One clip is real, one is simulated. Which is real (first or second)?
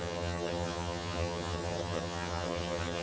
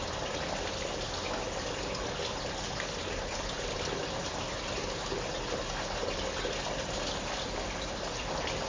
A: second